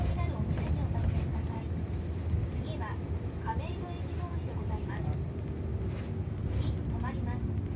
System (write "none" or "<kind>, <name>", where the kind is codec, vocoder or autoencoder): none